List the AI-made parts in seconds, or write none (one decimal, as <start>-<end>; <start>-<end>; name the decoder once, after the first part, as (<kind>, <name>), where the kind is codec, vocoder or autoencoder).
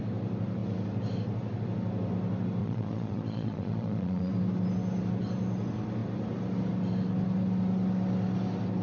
2.6-4.3 (vocoder, Vocos)